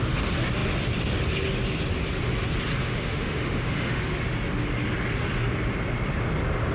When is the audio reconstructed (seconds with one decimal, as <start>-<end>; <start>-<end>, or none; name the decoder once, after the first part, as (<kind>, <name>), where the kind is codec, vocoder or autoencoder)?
2.8-4.0 (autoencoder, DAC-VAE)